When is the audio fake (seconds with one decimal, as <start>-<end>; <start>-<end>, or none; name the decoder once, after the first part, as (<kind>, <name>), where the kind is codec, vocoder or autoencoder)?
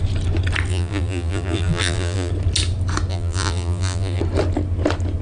0.7-2.3 (vocoder, BigVGAN v2); 3.1-4.2